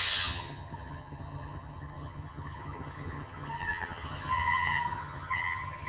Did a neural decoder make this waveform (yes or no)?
yes